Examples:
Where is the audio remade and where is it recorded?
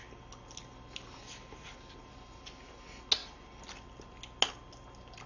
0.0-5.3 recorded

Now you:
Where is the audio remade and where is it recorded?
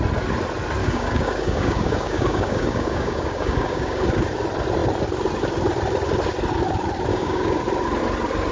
0.0-0.8 recorded; 0.8-4.1 remade; 4.1-7.1 recorded; 7.1-7.6 remade; 7.6-8.5 recorded